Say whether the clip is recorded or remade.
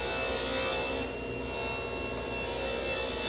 recorded